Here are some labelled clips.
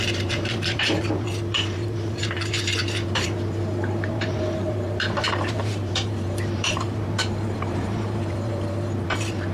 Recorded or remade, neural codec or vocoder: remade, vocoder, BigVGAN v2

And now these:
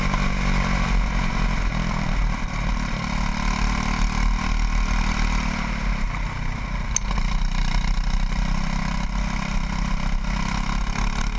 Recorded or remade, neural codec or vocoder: recorded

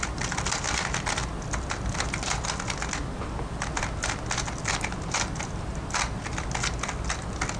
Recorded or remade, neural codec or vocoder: recorded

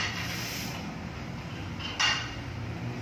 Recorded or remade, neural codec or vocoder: recorded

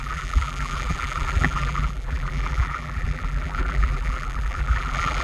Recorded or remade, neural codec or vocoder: remade, vocoder, BigVGAN v2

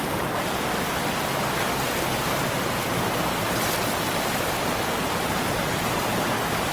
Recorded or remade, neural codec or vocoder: recorded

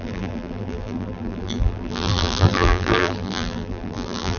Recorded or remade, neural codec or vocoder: remade, vocoder, BigVGAN v2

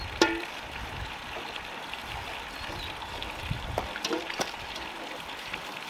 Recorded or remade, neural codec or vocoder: remade, vocoder, BigVGAN v2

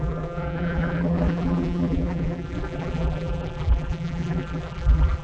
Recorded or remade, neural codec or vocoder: remade, vocoder, BigVGAN v2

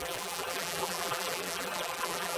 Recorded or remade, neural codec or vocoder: remade, vocoder, BigVGAN v2